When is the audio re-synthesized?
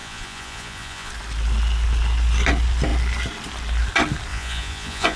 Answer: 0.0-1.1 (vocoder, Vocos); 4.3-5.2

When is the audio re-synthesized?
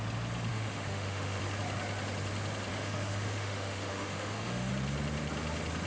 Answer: 0.5-1.4 (autoencoder, DAC-VAE); 2.7-4.7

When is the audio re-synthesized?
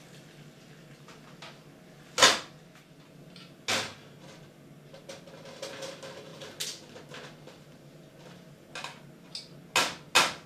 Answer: none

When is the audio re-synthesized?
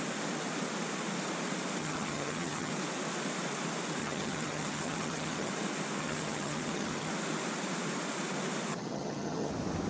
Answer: 1.8-2.7 (vocoder, HiFi-GAN); 4.0-5.5; 6.0-7.1; 8.7-9.5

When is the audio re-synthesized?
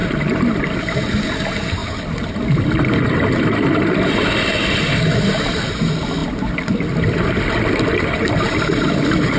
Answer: none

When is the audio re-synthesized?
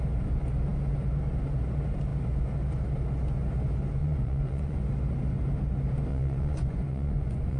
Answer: 4.0-4.8 (vocoder, Vocos); 6.1-7.6